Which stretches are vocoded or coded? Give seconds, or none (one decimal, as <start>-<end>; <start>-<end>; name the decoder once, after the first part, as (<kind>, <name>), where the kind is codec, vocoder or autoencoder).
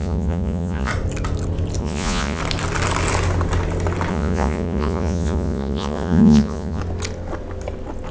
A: 0.0-0.9 (vocoder, Vocos); 1.8-2.4; 4.1-6.8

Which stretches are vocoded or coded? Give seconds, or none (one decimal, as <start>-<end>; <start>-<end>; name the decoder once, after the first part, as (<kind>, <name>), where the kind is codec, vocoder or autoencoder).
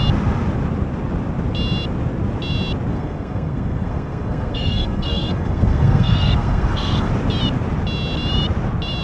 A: 2.9-7.1 (codec, SNAC)